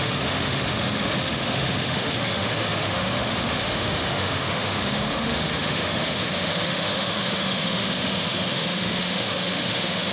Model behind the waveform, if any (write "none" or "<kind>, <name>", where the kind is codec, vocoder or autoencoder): autoencoder, DAC-VAE